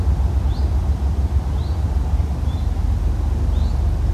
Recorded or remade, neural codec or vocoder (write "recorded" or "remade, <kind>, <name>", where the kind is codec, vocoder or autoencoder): recorded